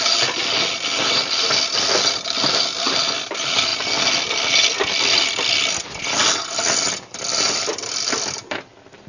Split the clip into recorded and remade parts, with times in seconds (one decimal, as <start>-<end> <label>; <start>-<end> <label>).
0.0-9.1 recorded